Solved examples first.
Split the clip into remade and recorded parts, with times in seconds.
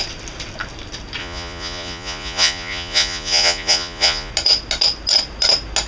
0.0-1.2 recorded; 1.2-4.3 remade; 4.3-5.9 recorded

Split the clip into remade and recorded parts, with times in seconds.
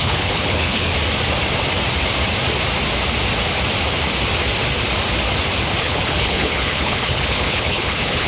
0.0-0.9 remade; 0.9-5.8 recorded; 5.8-8.3 remade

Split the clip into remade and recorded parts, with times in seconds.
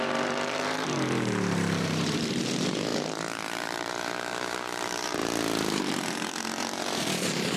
0.0-5.2 remade; 5.2-5.8 recorded; 5.8-7.6 remade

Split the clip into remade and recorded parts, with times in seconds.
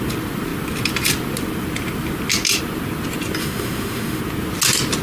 0.0-3.4 recorded; 3.4-4.2 remade; 4.2-5.0 recorded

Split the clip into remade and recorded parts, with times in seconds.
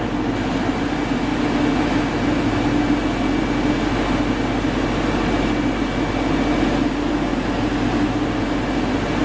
0.0-9.2 recorded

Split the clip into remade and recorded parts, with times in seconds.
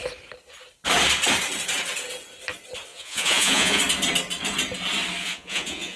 0.0-2.9 recorded; 2.9-3.8 remade; 3.8-5.2 recorded; 5.2-6.0 remade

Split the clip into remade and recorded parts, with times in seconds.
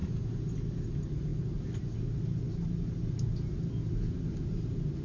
0.0-5.0 recorded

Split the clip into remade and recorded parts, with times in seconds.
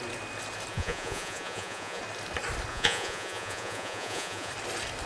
0.0-0.7 recorded; 0.7-2.0 remade; 2.0-2.7 recorded; 2.7-4.5 remade; 4.5-5.1 recorded